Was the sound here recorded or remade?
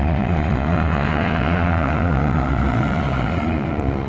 remade